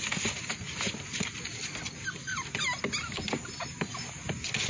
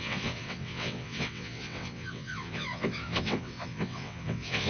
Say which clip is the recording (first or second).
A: first